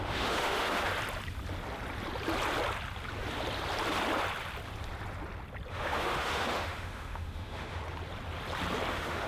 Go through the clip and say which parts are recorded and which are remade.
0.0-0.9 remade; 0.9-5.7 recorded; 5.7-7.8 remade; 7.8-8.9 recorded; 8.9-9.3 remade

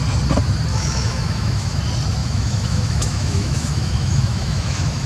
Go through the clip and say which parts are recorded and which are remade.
0.0-0.7 recorded; 0.7-1.8 remade; 1.8-2.2 recorded; 2.2-5.1 remade

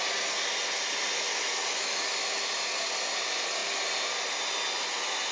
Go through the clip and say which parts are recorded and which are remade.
0.0-1.3 recorded; 1.3-2.1 remade; 2.1-5.3 recorded

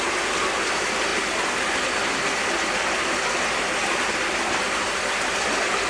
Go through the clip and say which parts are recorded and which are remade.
0.0-5.9 recorded